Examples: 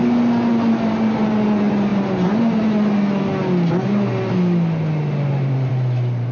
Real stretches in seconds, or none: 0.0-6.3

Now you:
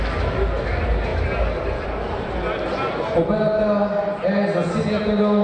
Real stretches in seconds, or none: 0.0-5.4

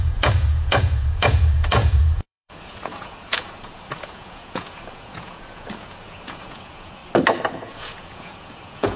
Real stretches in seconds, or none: 7.0-7.5